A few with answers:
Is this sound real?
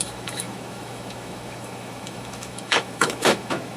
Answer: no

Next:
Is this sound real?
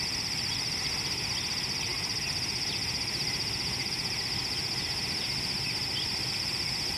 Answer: yes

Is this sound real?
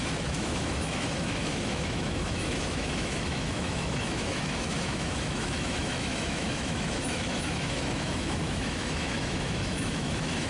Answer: no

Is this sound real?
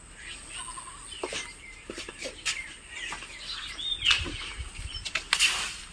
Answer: yes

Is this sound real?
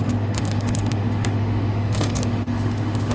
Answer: no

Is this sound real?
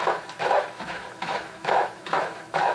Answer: no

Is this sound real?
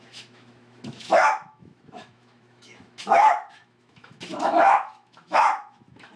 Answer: no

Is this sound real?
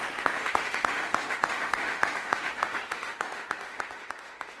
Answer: no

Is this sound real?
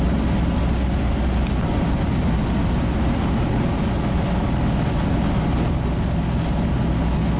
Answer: yes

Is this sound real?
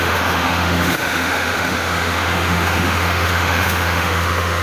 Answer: no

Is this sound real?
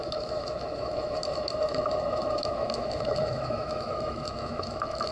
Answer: no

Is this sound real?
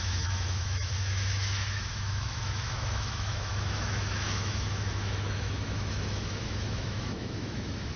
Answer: no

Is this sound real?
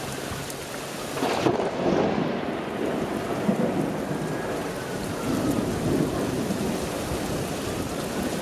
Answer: yes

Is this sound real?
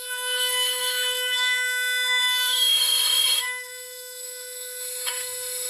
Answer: no